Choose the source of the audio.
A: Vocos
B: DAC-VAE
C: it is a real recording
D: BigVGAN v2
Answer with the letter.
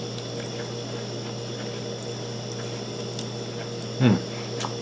C